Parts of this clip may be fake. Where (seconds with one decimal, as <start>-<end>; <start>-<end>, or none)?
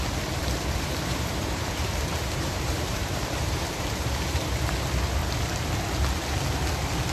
0.4-4.7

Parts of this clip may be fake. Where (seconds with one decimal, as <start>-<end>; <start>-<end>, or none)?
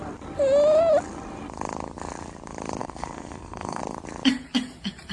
2.8-3.8